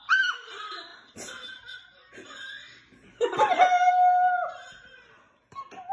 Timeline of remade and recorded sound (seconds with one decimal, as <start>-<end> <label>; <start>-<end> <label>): 0.0-5.9 recorded